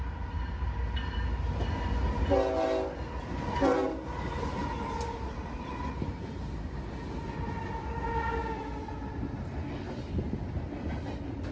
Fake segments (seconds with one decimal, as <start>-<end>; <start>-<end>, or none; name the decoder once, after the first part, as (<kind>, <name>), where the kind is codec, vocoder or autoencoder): none